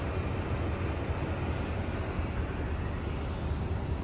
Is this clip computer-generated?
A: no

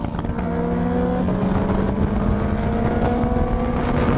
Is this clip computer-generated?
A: no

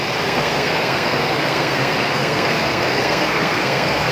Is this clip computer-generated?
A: yes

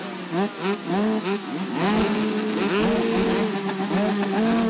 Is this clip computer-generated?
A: no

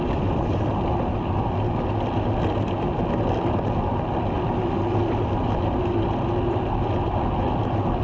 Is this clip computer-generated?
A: no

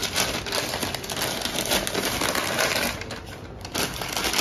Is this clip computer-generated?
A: no